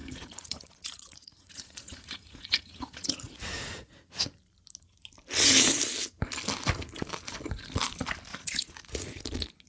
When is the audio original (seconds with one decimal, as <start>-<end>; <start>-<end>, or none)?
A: 4.2-8.3; 9.2-9.7